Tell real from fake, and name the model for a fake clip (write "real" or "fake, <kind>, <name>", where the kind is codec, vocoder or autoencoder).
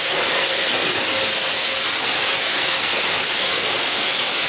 fake, codec, SNAC